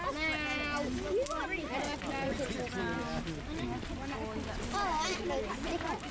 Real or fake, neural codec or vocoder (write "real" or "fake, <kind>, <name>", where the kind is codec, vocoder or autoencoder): real